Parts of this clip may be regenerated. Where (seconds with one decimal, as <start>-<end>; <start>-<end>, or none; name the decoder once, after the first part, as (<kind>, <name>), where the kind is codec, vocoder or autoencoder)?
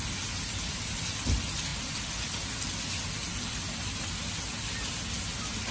none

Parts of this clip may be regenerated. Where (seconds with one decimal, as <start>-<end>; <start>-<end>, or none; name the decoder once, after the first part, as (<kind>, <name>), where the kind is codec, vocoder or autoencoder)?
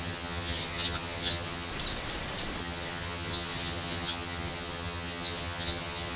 0.0-1.7 (vocoder, HiFi-GAN); 2.6-6.2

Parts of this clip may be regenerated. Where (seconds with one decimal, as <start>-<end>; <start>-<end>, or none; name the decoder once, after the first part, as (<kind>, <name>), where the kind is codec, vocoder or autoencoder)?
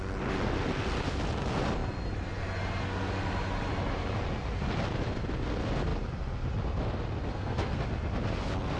7.3-7.8 (codec, SNAC)